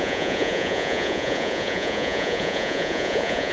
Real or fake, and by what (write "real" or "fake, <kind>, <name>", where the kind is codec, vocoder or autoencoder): fake, vocoder, Vocos